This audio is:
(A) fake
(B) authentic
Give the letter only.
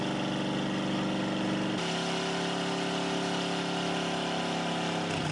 B